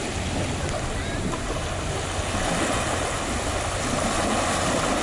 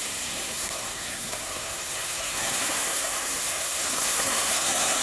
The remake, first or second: second